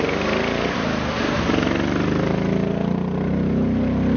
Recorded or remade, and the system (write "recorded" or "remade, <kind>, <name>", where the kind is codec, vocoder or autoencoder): recorded